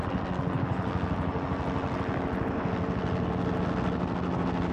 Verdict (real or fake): real